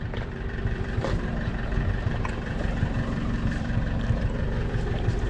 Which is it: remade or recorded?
remade